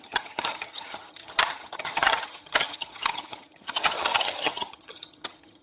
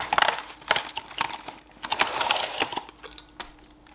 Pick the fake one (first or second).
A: first